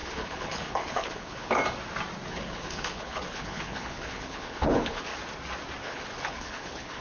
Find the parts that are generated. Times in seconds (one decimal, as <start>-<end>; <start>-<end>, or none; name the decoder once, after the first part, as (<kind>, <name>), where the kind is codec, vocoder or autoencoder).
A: 0.0-1.6 (codec, HILCodec); 2.3-5.1; 5.8-7.0